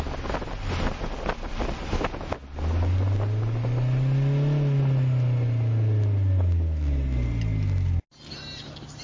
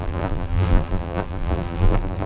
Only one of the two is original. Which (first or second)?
first